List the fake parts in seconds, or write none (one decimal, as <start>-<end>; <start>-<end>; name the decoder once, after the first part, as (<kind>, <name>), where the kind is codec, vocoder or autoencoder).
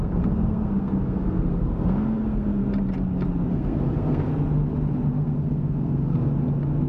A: 0.0-2.6 (codec, SNAC); 3.5-4.3; 5.1-6.3